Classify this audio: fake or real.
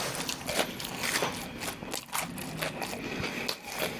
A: real